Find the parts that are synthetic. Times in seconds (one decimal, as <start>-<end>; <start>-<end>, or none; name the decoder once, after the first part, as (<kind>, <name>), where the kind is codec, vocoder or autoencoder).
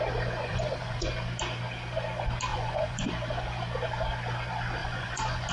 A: 0.4-1.1 (vocoder, Vocos); 2.5-3.1; 4.8-5.5